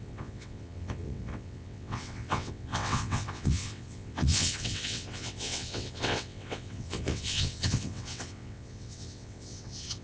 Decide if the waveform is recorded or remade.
remade